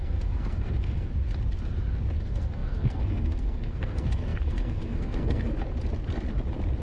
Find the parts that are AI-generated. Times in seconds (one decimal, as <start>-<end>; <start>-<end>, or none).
0.0-1.1; 2.2-5.6